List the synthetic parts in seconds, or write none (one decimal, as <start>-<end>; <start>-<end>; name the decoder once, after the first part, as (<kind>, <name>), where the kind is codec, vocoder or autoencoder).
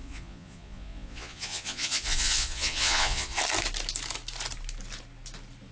0.0-3.4 (vocoder, Vocos)